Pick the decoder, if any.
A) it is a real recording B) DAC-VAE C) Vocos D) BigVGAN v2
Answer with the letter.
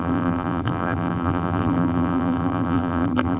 D